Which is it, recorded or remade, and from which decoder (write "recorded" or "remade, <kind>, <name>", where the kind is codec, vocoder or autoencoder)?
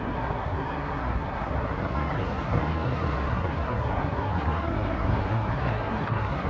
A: remade, codec, SNAC